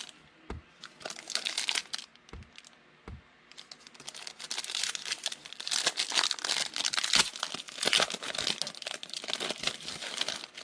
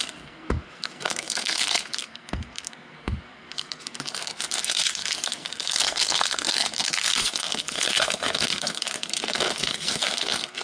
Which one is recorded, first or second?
first